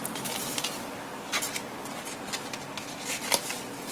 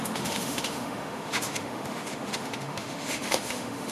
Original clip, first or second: first